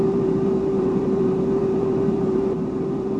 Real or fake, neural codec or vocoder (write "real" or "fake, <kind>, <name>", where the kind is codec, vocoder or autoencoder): fake, vocoder, BigVGAN v2